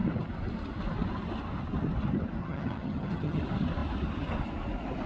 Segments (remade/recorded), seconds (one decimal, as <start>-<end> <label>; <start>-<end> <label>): 0.0-2.4 recorded; 2.4-3.4 remade; 3.4-5.1 recorded